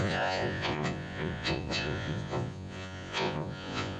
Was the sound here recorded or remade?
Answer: remade